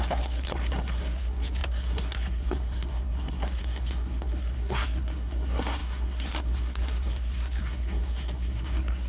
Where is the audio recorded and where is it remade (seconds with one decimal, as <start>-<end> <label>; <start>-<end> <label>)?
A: 0.0-9.1 remade